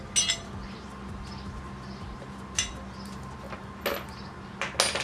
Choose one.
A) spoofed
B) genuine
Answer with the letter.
B